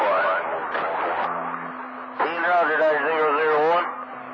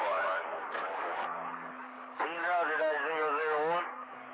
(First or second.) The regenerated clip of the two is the second